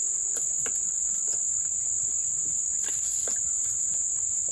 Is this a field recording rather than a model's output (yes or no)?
yes